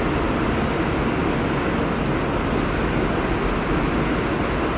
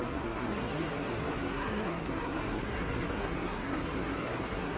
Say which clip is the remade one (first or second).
second